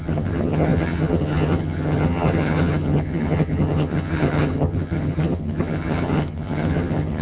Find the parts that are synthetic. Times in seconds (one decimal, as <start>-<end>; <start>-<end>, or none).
0.0-7.2